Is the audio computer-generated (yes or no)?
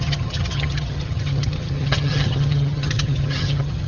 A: yes